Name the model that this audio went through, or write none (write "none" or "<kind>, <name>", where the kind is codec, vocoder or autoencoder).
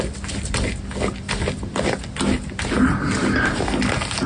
none